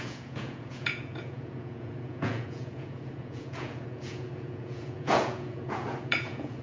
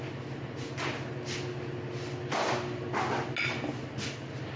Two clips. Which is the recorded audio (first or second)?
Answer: second